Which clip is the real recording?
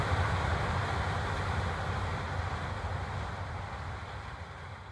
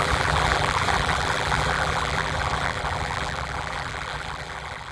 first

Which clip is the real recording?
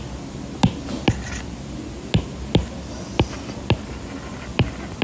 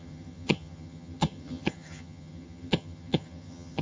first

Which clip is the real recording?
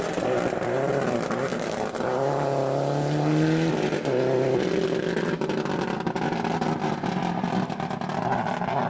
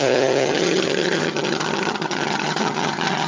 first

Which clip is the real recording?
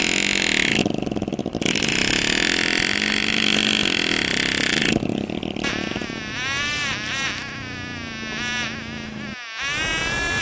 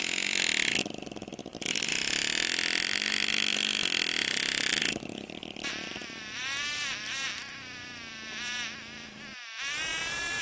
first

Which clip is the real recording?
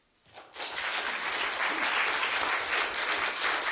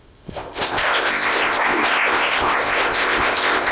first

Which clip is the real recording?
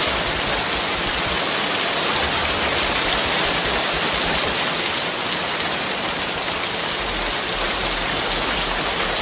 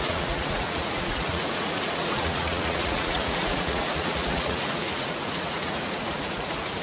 first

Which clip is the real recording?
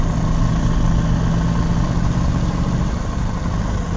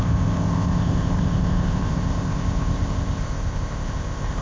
first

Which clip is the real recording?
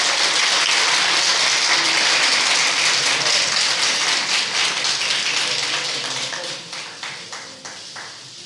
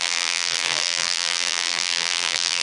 first